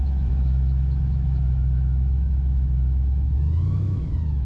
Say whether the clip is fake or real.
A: fake